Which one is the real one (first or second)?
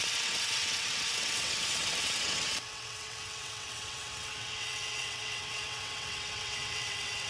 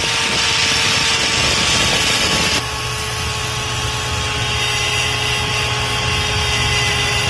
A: second